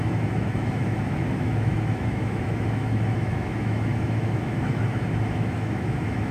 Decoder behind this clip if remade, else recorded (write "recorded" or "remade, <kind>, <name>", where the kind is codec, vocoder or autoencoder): remade, autoencoder, DAC-VAE